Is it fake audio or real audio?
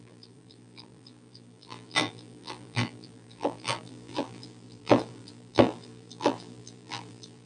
fake